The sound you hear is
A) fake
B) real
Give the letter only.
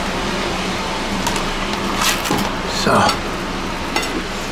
B